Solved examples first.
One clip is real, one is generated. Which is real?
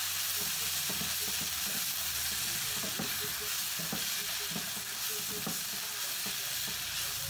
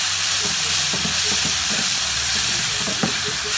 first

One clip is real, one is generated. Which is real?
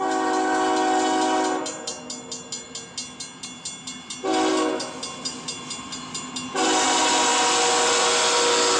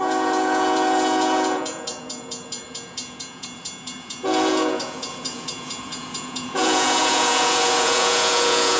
first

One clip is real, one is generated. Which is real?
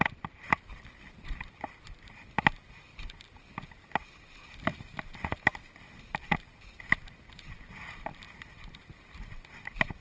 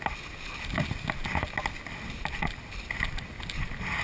second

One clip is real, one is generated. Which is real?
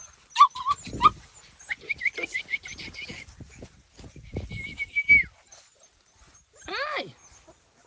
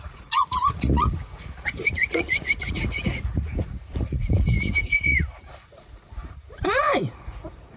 first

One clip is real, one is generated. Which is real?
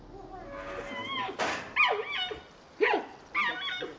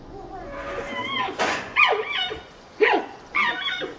first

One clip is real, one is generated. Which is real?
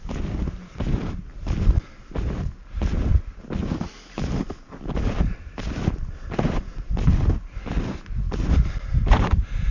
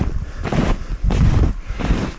first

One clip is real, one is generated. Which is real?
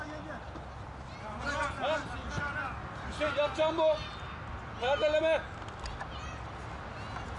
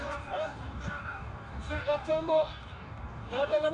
first